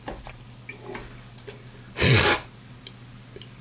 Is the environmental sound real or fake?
real